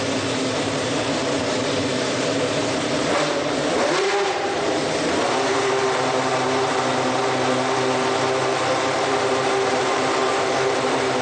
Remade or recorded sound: remade